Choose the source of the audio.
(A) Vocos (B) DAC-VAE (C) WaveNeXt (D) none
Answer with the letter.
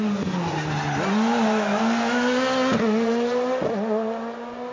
D